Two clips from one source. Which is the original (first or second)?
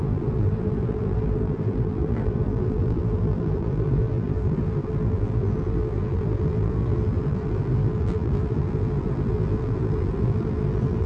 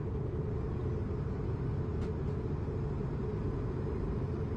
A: second